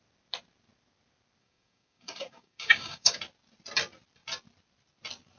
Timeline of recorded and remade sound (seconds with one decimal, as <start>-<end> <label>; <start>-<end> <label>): 0.0-1.4 recorded; 1.4-3.2 remade; 3.2-5.4 recorded